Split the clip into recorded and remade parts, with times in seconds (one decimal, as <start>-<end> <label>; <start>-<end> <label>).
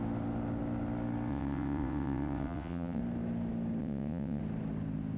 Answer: 0.0-1.3 recorded; 1.3-3.0 remade; 3.0-3.8 recorded; 3.8-4.4 remade; 4.4-5.2 recorded